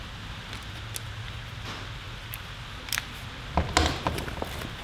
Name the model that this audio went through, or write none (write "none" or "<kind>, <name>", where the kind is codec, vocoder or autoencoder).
none